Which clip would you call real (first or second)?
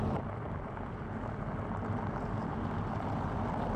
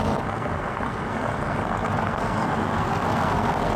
first